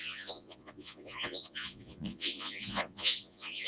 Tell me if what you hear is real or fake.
fake